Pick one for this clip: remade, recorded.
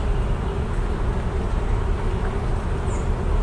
recorded